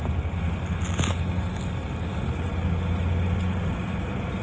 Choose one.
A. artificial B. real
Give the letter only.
B